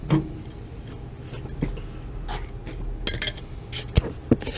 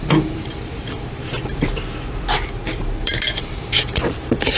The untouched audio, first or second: first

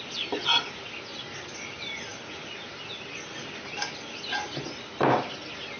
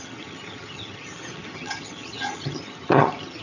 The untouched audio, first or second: first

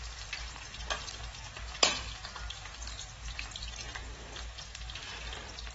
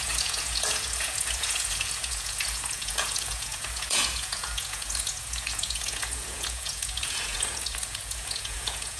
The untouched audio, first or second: first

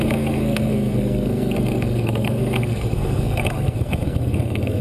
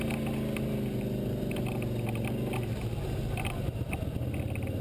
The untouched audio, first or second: second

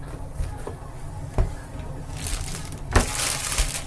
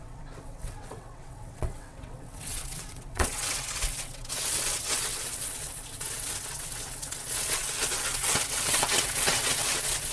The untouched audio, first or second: first